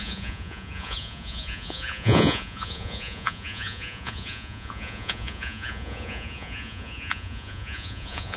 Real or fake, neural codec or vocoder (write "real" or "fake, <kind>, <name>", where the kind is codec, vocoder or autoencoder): fake, vocoder, Vocos